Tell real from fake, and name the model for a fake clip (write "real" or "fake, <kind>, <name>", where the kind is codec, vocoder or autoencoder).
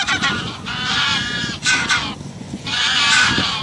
fake, vocoder, Vocos